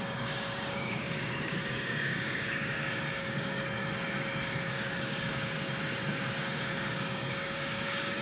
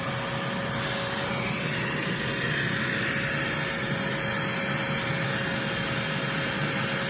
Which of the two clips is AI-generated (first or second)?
first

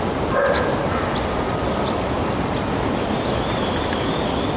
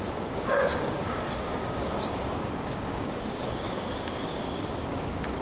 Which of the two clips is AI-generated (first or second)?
second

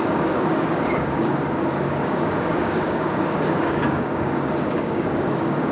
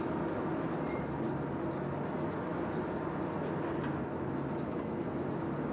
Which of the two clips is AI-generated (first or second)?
first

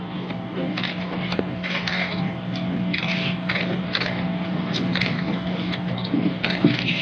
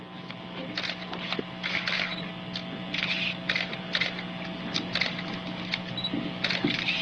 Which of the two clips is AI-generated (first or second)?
first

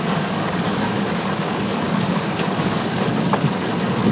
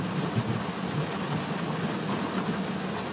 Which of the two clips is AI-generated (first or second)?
first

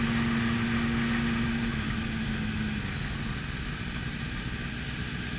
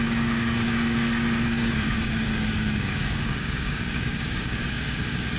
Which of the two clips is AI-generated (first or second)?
second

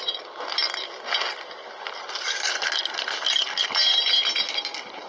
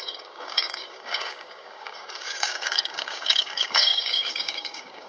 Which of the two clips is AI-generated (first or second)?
second